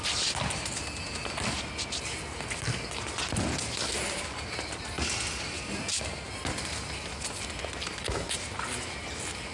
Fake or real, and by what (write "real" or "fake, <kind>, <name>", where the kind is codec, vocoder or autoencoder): real